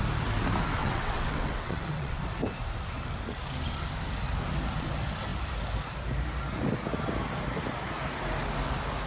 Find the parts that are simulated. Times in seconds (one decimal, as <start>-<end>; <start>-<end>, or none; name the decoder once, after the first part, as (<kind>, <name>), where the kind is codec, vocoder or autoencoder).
0.8-2.2 (vocoder, WaveNeXt)